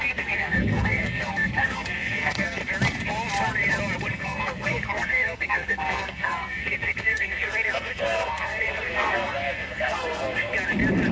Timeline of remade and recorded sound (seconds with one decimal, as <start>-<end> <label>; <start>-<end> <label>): 0.0-2.6 remade; 2.6-4.1 recorded; 4.1-10.5 remade; 10.5-11.1 recorded